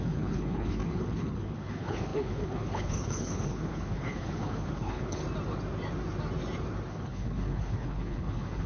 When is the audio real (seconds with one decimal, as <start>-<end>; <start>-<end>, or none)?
5.2-6.9